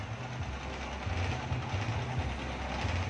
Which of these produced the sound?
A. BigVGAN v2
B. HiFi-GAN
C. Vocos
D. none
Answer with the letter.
D